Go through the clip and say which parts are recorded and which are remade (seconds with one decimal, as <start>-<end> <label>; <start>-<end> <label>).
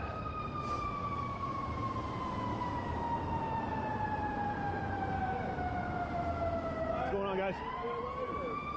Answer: 0.0-1.0 recorded; 1.0-1.6 remade; 1.6-8.8 recorded